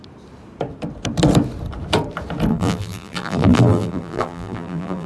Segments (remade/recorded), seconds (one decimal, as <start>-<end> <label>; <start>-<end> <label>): 0.0-2.5 recorded; 2.5-5.1 remade